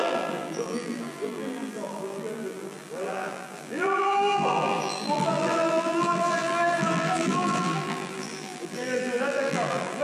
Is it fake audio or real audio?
fake